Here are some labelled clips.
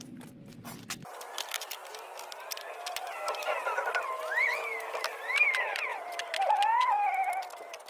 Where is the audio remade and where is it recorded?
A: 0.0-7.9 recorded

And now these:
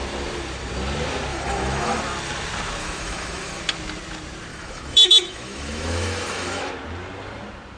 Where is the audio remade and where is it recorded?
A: 0.0-1.3 recorded; 1.3-2.0 remade; 2.0-2.8 recorded; 2.8-3.6 remade; 3.6-4.5 recorded; 4.5-6.7 remade; 6.7-7.8 recorded

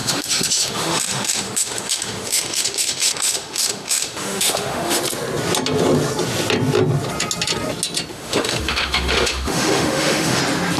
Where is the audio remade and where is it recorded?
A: 0.0-5.0 remade; 5.0-8.1 recorded; 8.1-10.4 remade; 10.4-10.8 recorded

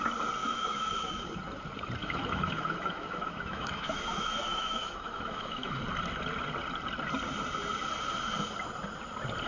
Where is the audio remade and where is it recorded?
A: 0.0-0.4 recorded; 0.4-1.2 remade; 1.2-2.0 recorded; 2.0-5.8 remade; 5.8-9.5 recorded

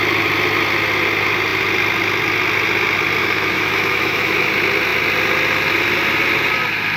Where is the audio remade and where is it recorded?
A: 0.0-3.2 recorded; 3.2-4.5 remade; 4.5-7.0 recorded